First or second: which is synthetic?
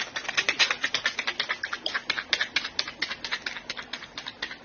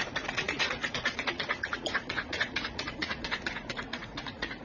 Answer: second